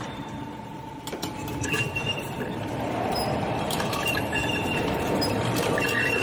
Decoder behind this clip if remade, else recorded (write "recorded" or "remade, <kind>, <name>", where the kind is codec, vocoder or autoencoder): remade, vocoder, BigVGAN v2